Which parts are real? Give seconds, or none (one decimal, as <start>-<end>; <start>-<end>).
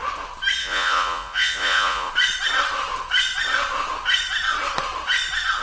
0.0-0.6; 2.1-5.6